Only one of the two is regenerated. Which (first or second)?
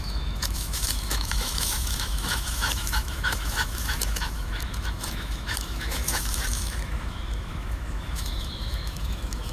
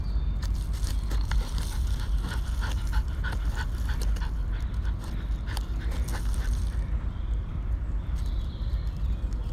first